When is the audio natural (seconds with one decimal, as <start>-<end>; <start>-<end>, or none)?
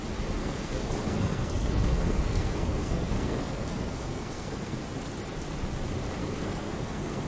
0.0-0.4; 4.8-6.2